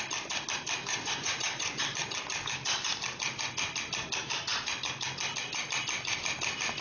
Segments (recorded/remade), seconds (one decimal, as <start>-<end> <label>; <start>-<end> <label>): 0.0-0.9 recorded; 0.9-1.8 remade; 1.8-6.8 recorded